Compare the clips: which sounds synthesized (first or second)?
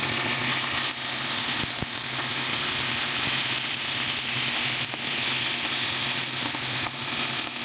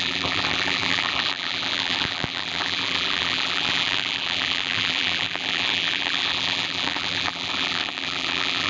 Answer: second